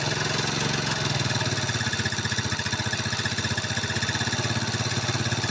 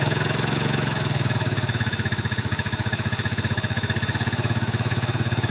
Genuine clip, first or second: first